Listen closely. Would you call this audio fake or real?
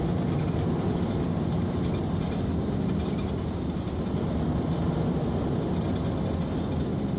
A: real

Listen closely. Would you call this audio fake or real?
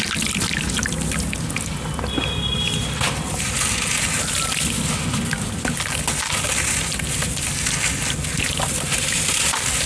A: real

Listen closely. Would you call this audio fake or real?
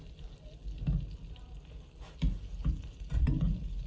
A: real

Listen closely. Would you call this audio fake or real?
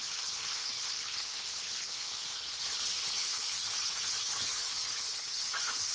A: fake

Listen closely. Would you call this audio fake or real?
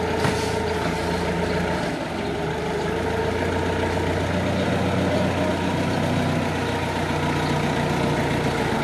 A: real